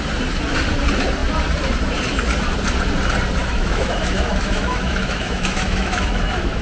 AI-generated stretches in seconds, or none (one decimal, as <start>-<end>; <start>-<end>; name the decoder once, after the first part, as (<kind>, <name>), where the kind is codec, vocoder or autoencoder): 3.4-6.6 (autoencoder, DAC-VAE)